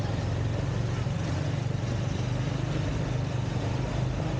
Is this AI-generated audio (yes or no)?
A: no